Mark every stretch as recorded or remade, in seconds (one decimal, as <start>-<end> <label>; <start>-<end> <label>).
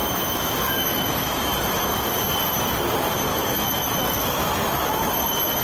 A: 0.0-2.1 remade; 2.1-3.3 recorded; 3.3-5.1 remade; 5.1-5.6 recorded